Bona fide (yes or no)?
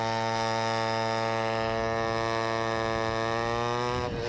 yes